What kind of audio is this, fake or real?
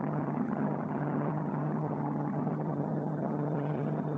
fake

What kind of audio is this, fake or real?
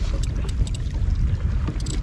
real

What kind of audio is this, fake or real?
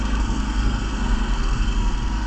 fake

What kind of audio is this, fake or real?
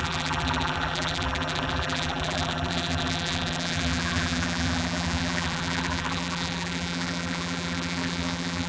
fake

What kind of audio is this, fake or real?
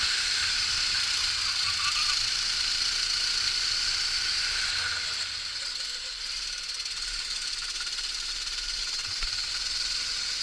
real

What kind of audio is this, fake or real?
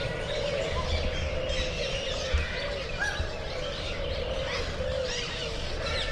real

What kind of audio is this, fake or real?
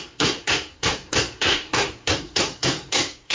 fake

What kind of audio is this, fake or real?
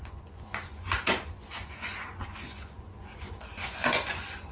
fake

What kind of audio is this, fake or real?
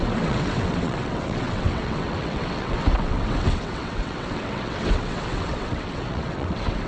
fake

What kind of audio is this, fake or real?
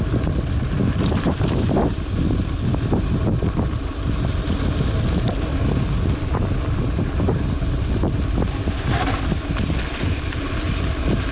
real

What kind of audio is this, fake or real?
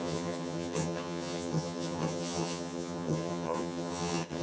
fake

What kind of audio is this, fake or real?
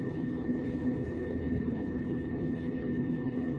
fake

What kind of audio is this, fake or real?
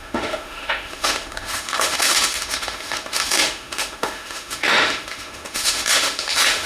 fake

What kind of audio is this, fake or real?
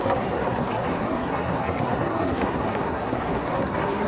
fake